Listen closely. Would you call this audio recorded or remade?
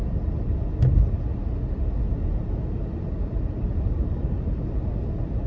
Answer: recorded